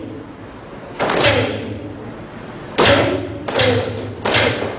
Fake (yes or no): no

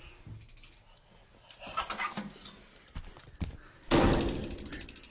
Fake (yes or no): no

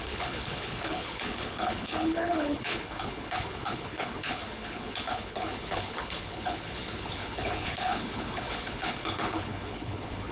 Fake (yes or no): yes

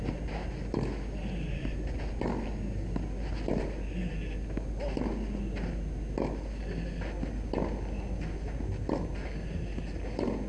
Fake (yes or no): no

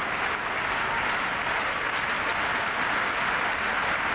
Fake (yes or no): no